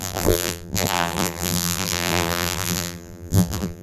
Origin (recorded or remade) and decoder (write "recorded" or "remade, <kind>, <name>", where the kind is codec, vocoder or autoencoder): remade, vocoder, BigVGAN v2